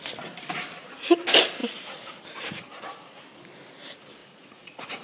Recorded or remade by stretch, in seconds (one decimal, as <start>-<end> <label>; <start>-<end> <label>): 0.0-1.6 recorded; 1.6-2.2 remade; 2.2-4.2 recorded; 4.2-5.0 remade